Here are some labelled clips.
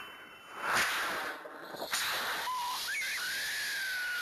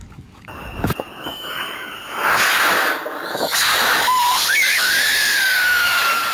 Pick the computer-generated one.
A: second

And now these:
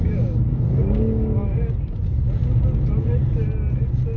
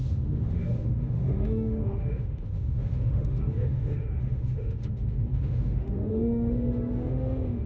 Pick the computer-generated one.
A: second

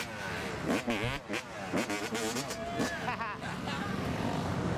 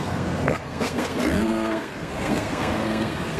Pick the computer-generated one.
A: second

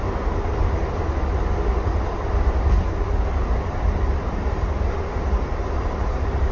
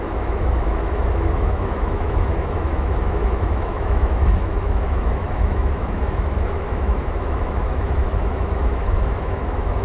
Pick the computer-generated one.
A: second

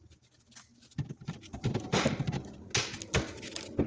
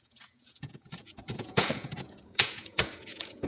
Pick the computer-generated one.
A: second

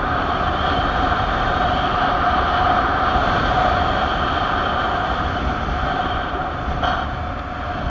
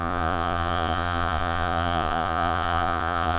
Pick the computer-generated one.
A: second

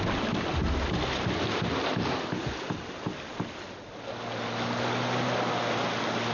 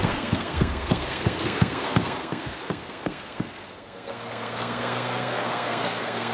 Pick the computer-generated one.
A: second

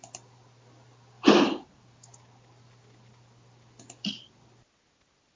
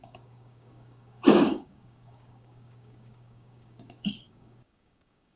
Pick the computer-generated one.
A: second